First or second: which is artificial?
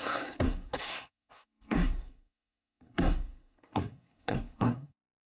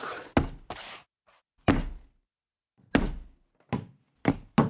first